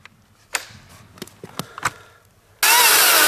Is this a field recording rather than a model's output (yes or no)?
yes